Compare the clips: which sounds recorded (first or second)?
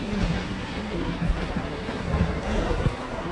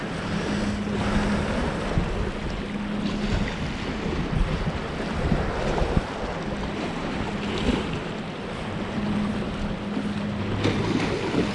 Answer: second